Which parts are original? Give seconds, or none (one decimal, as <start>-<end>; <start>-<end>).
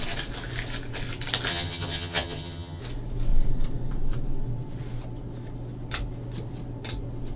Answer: 0.0-1.5; 2.8-7.4